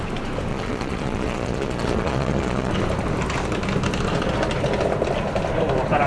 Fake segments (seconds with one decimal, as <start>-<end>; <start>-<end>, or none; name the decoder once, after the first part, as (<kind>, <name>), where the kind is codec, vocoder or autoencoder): 0.5-2.7 (vocoder, Vocos)